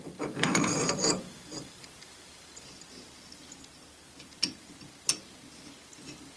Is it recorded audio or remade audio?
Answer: recorded